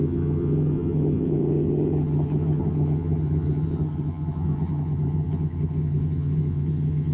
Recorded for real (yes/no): no